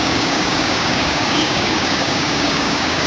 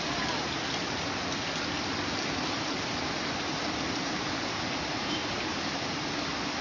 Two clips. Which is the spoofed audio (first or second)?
first